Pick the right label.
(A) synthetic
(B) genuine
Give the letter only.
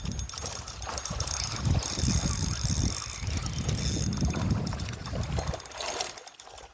B